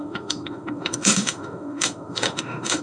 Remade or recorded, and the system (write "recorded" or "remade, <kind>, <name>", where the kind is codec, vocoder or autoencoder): remade, autoencoder, DAC-VAE